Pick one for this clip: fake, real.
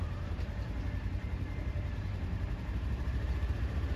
fake